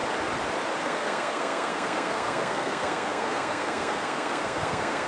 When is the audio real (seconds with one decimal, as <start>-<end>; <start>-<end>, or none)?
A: 0.0-0.8